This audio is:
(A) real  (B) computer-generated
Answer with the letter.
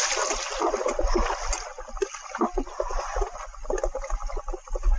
A